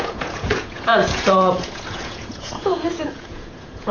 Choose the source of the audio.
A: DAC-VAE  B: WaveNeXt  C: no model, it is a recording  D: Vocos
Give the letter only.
D